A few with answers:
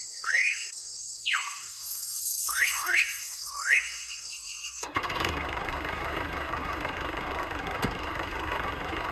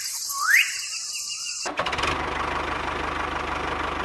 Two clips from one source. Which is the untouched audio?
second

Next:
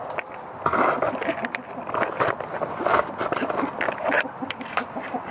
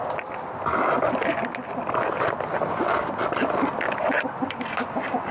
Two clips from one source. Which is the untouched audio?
second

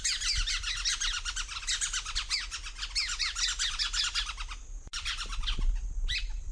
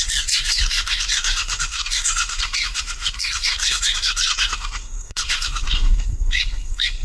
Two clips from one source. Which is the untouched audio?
first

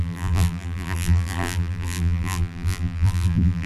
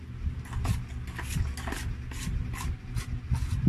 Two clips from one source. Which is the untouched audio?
second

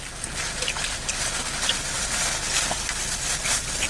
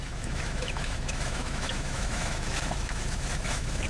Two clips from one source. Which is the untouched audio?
first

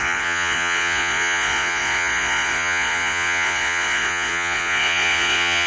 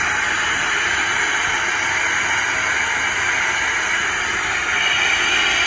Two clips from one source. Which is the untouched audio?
second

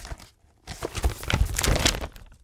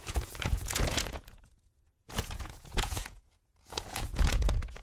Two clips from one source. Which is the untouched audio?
first